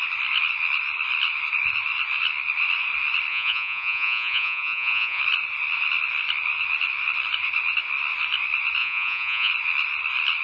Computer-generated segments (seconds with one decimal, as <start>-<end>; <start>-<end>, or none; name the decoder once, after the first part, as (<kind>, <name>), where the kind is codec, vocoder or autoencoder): 3.3-5.2 (vocoder, Vocos); 8.8-9.5